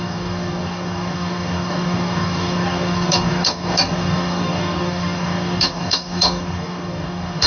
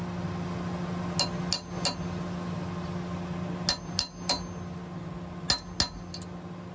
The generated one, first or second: first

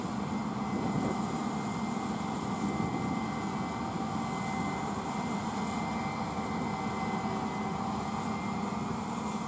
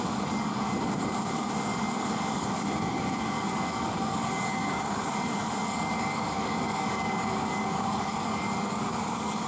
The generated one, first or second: second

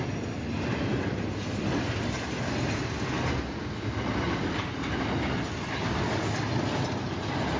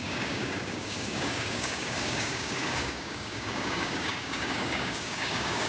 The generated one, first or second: second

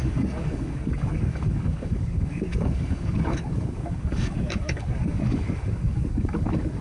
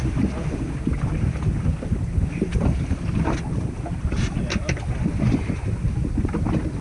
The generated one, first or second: first